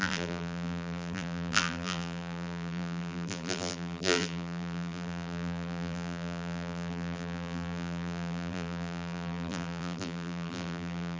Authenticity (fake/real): fake